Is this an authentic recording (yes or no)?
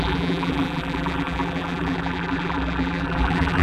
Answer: no